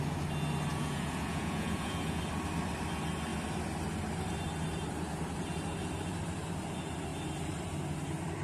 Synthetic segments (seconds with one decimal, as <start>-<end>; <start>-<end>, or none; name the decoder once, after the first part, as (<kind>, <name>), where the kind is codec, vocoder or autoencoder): 0.7-2.2 (vocoder, Vocos)